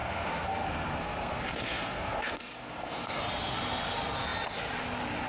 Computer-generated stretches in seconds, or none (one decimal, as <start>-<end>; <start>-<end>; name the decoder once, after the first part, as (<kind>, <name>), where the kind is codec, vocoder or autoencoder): 0.0-3.2 (codec, SNAC)